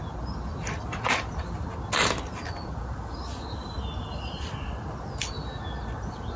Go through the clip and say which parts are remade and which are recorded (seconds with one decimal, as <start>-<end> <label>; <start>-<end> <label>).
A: 0.0-6.4 recorded